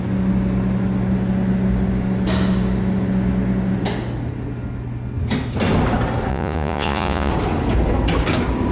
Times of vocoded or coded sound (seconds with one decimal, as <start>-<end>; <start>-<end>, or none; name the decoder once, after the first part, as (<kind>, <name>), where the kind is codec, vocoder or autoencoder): 6.3-7.3 (vocoder, Vocos)